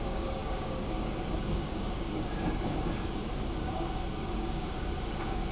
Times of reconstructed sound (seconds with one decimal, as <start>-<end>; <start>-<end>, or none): 0.0-5.5